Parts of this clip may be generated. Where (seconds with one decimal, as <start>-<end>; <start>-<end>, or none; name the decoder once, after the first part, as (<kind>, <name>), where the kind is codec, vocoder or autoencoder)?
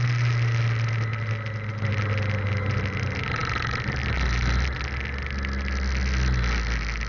none